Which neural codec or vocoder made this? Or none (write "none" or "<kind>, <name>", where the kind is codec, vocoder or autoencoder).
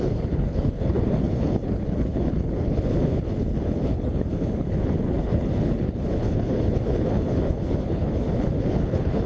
codec, HILCodec